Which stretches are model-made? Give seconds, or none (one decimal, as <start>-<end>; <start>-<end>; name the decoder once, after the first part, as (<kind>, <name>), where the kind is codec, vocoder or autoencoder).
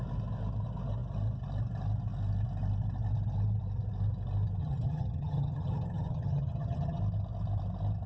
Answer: 4.6-7.0 (vocoder, HiFi-GAN)